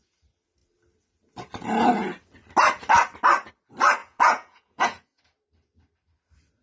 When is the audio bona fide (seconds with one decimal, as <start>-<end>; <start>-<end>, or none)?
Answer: 0.0-4.0; 5.2-6.6

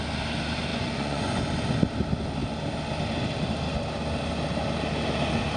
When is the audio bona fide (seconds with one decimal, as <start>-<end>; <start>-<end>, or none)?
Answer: 0.0-0.7; 1.4-5.6

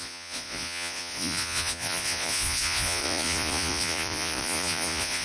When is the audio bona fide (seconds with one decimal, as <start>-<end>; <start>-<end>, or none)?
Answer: none

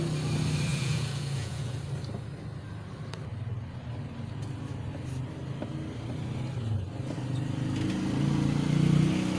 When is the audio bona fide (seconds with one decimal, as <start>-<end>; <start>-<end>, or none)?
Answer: 0.0-0.7; 1.8-9.4